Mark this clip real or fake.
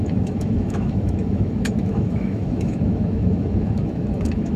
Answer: fake